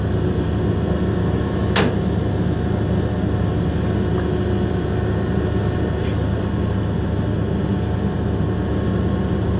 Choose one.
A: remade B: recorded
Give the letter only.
B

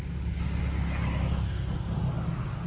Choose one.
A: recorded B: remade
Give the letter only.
A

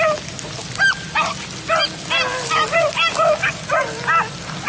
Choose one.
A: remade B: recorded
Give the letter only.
B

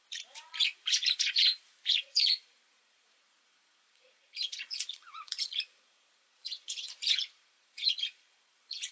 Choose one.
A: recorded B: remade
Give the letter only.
B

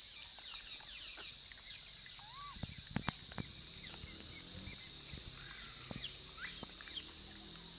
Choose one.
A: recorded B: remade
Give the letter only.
A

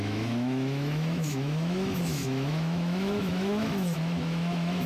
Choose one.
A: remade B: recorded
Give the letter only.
A